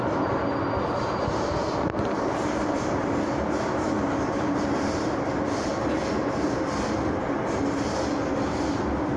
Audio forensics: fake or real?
real